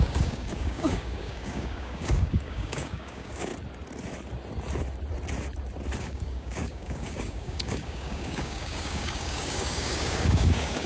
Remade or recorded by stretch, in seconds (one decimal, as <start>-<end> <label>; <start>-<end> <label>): 0.0-3.5 remade; 3.5-6.0 recorded; 6.0-10.9 remade